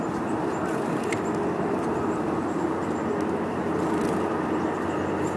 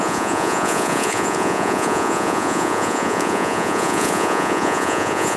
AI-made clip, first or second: second